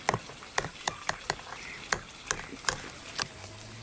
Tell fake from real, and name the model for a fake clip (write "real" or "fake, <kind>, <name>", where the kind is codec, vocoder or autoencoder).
real